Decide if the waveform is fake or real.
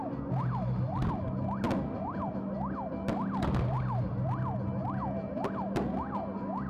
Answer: real